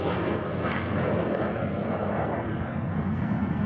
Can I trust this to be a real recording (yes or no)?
no